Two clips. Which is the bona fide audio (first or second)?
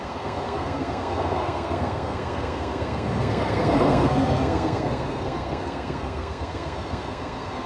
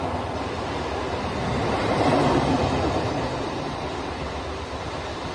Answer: second